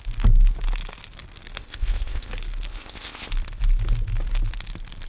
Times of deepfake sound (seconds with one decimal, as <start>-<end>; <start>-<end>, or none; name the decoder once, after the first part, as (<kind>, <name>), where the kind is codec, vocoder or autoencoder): 1.6-2.3 (codec, ZipCodec); 2.7-3.3